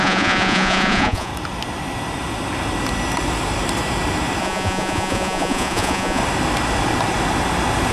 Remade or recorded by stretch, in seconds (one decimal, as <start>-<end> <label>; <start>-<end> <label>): 0.0-1.3 remade; 1.3-4.4 recorded; 4.4-6.2 remade; 6.2-7.9 recorded